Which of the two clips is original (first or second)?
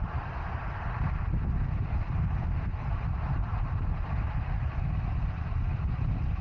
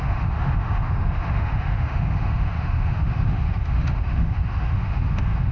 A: first